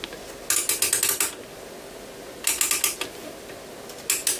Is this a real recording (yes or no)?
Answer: yes